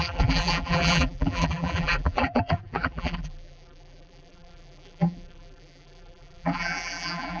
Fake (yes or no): yes